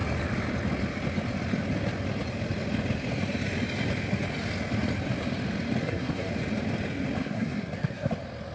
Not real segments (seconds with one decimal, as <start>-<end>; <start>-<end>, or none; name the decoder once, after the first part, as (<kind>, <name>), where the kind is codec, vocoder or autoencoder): 5.8-6.3 (codec, SNAC); 7.2-8.1